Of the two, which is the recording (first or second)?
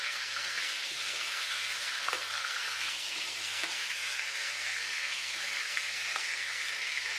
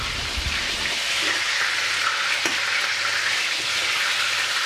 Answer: second